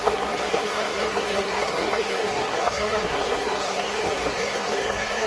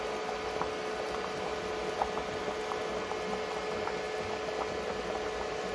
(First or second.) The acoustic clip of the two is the second